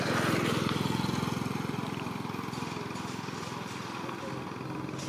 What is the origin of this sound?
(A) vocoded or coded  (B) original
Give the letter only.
B